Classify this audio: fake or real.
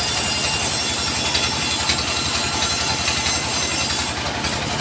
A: real